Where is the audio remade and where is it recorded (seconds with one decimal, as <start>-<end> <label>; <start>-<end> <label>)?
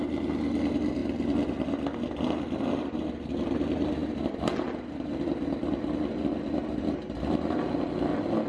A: 0.0-8.5 recorded